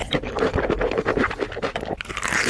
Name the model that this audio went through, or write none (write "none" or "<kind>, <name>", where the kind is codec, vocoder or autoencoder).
none